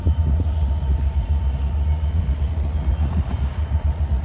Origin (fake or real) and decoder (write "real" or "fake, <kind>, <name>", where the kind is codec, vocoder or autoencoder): fake, vocoder, Vocos